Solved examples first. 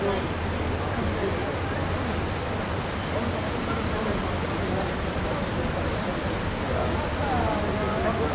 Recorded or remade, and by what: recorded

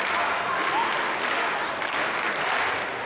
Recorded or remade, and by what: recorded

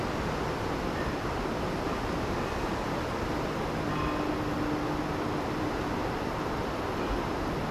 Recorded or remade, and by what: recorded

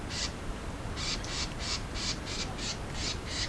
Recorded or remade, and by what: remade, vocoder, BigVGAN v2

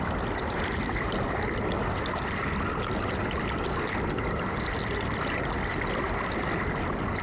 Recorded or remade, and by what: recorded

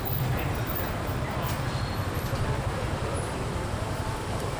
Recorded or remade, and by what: remade, vocoder, BigVGAN v2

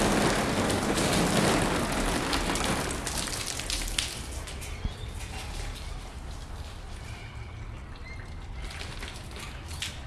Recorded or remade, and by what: recorded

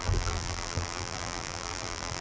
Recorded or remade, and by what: remade, vocoder, BigVGAN v2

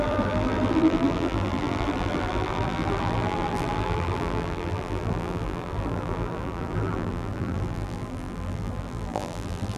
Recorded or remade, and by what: remade, vocoder, BigVGAN v2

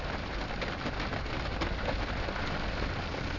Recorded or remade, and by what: recorded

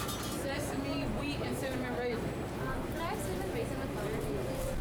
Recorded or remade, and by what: recorded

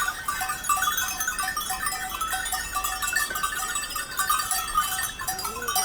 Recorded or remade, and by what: recorded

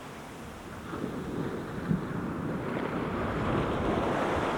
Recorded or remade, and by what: recorded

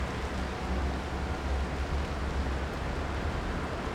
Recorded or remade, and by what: recorded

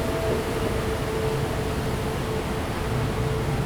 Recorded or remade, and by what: recorded